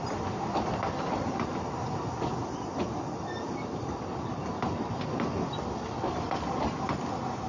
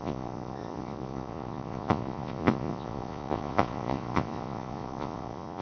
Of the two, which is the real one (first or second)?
first